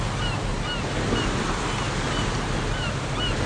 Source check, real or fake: real